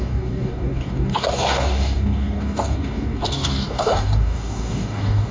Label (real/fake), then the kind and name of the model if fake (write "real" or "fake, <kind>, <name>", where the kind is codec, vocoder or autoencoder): fake, codec, DAC